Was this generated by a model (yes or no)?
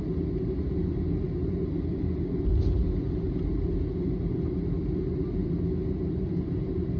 no